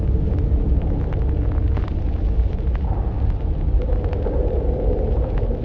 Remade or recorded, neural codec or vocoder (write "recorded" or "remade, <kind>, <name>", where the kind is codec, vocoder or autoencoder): recorded